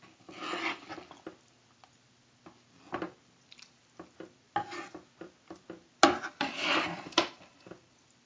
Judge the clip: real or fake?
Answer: real